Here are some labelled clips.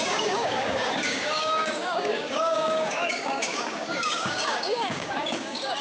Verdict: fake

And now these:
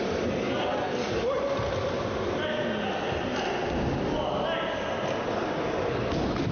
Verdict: real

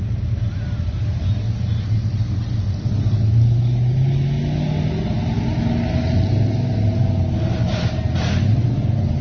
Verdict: real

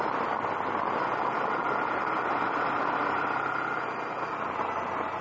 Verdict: real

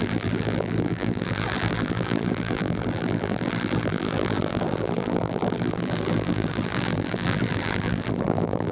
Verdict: fake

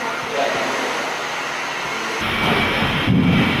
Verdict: real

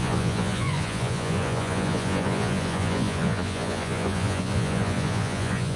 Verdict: fake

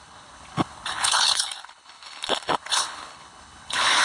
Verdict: fake